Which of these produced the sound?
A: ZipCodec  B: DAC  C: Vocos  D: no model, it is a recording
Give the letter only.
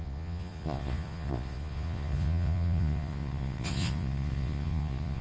C